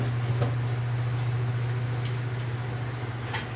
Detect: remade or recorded recorded